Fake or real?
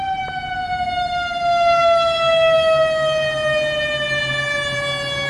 real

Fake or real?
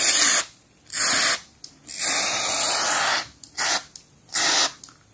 real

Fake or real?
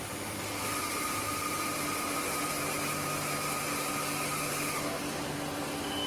real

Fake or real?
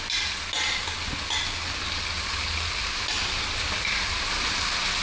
real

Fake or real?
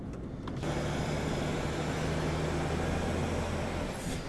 real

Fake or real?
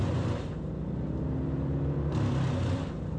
real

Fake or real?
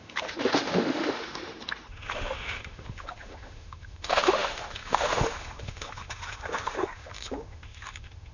fake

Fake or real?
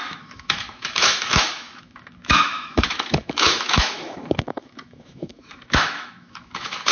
fake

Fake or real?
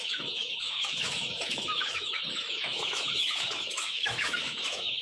fake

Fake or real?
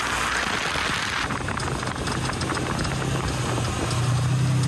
real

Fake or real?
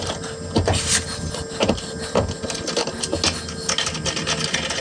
real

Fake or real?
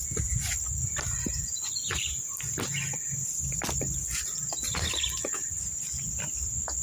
real